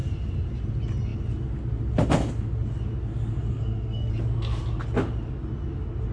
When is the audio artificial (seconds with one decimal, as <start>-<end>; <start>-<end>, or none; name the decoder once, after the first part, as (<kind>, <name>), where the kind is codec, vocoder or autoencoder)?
3.5-4.1 (codec, SNAC)